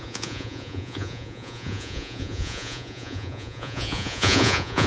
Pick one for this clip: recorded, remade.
remade